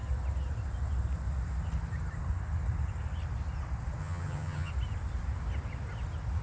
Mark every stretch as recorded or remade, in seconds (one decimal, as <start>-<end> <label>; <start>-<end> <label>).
0.0-4.0 recorded; 4.0-4.7 remade; 4.7-6.4 recorded